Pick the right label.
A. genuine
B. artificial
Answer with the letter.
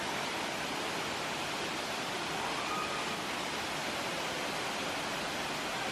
A